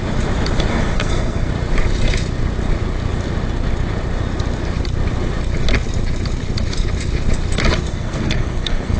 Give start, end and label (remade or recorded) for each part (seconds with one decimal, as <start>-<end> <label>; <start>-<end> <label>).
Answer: 0.0-0.7 recorded; 0.7-1.5 remade; 1.5-7.9 recorded; 7.9-9.0 remade